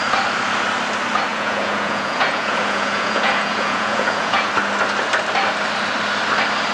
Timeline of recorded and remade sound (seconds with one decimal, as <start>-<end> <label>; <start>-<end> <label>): 0.0-1.3 recorded; 1.3-4.5 remade; 4.5-6.7 recorded